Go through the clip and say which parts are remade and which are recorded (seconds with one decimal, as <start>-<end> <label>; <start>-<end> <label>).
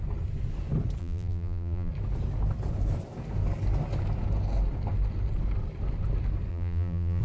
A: 0.0-1.0 recorded; 1.0-1.9 remade; 1.9-6.5 recorded; 6.5-7.2 remade